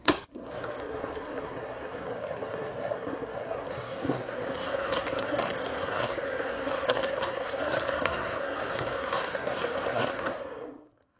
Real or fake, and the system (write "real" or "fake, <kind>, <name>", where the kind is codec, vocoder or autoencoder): fake, codec, SNAC